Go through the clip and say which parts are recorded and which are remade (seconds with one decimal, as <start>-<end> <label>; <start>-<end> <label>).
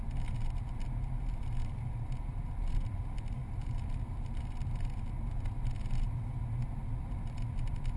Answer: 0.0-8.0 recorded